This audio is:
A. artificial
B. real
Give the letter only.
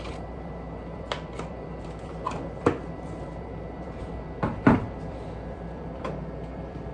A